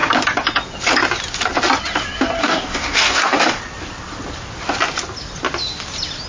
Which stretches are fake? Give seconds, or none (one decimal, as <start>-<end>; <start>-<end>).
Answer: 2.4-3.6